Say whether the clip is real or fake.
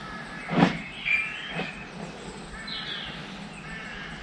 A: real